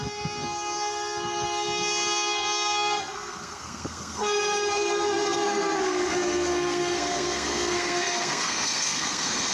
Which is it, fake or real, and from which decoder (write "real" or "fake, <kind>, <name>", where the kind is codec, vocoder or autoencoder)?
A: fake, codec, SNAC